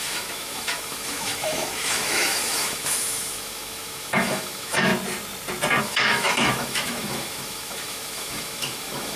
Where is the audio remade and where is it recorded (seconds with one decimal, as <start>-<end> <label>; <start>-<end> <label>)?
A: 0.0-4.9 remade; 4.9-5.8 recorded; 5.8-9.2 remade